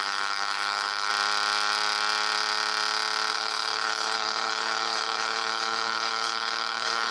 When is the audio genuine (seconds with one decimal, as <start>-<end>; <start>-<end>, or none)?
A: 1.1-3.3